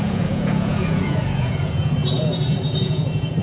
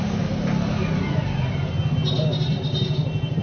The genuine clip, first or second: second